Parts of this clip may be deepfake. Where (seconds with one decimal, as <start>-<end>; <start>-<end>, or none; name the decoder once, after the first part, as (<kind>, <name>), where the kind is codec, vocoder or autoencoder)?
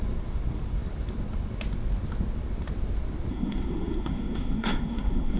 3.3-5.4 (codec, SNAC)